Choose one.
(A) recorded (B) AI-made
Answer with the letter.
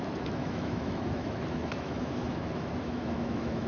B